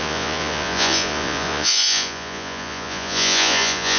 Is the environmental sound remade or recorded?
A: remade